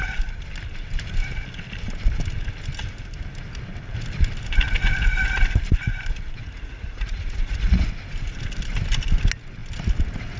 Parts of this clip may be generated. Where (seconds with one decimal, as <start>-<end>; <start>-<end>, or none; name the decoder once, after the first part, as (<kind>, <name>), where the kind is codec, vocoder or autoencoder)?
6.4-7.9 (vocoder, Vocos)